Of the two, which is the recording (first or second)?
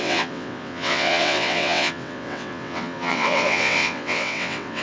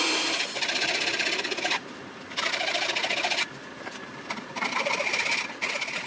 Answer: second